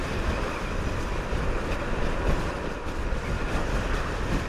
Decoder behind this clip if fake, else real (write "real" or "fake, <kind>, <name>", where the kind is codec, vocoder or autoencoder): real